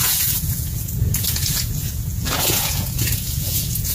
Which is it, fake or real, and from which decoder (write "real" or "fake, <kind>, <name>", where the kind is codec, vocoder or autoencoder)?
fake, vocoder, Vocos